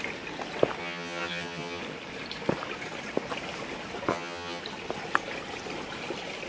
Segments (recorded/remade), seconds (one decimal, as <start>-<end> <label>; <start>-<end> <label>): 0.0-0.8 recorded; 0.8-1.8 remade; 1.8-4.1 recorded; 4.1-4.6 remade; 4.6-6.5 recorded